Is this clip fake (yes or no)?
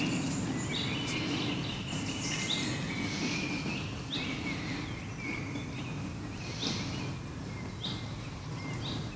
no